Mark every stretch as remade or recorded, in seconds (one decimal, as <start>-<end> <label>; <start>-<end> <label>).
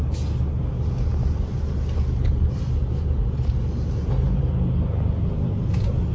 0.0-6.1 recorded